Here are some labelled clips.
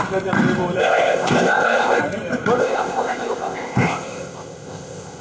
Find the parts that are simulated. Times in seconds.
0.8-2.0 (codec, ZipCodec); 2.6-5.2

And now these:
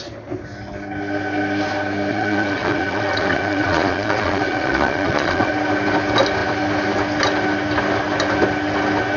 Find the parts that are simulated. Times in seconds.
2.1-5.5 (vocoder, Vocos)

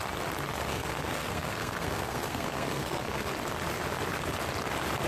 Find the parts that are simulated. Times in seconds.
0.7-3.3 (codec, SNAC)

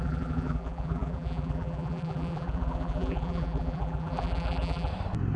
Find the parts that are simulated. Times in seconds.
0.0-4.9 (vocoder, BigVGAN v2)

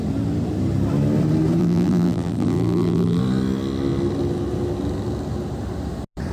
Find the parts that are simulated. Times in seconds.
1.6-3.2 (vocoder, BigVGAN v2)